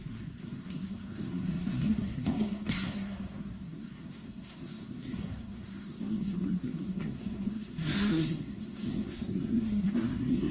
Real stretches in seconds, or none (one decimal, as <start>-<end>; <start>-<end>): none